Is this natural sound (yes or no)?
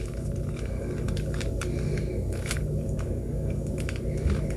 no